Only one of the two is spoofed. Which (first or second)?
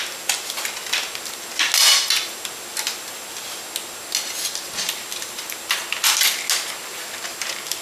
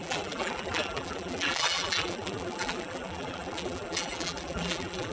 second